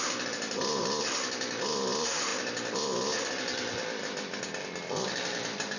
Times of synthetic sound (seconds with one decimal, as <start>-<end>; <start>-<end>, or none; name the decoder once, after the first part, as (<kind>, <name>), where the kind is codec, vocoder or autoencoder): none